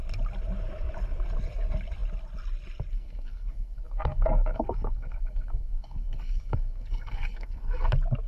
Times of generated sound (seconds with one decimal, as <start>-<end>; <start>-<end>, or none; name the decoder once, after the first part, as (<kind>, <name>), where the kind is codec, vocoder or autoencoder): 2.9-7.9 (codec, SNAC)